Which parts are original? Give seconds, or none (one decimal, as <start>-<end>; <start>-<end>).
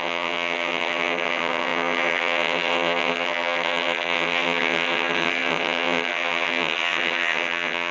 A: none